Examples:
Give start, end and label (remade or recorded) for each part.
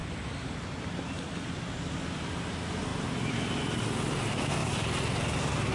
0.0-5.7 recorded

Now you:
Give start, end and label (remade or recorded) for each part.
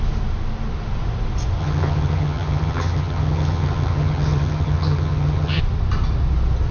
0.0-1.6 recorded; 1.6-5.6 remade; 5.6-6.7 recorded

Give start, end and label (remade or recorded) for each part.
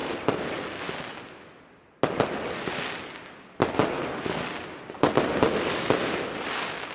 0.0-6.9 recorded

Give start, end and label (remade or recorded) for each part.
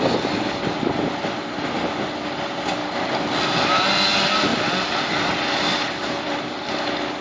0.0-4.5 recorded; 4.5-5.3 remade; 5.3-5.7 recorded; 5.7-6.7 remade; 6.7-7.2 recorded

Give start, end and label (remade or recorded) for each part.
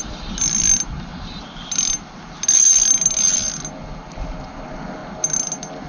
0.0-5.9 recorded